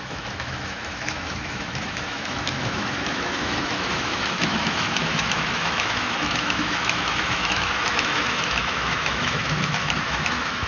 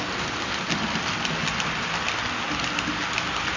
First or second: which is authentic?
second